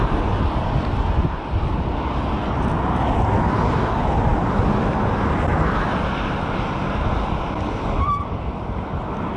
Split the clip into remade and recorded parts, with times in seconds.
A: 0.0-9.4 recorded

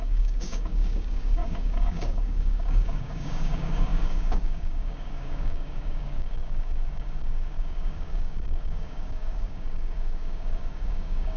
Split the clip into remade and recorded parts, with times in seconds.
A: 0.0-11.4 remade